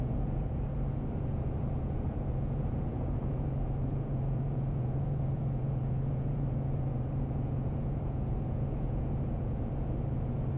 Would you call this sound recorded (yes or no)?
no